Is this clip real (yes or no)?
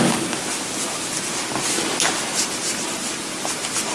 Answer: yes